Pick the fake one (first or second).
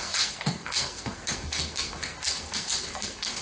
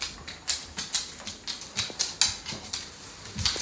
first